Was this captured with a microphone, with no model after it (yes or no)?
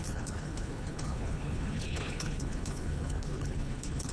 no